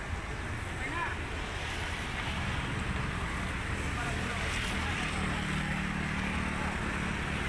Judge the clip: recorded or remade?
recorded